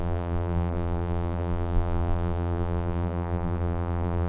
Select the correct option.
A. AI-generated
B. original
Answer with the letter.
A